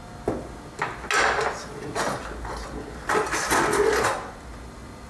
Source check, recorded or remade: recorded